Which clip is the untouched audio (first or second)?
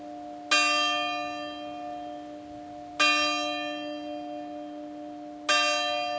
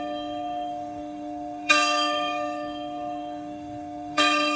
first